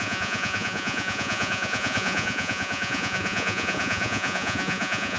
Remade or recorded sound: remade